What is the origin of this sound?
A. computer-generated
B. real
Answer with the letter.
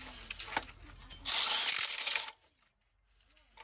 B